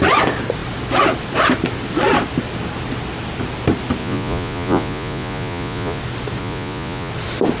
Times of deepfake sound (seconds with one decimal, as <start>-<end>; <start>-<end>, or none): 4.0-6.0; 6.4-7.1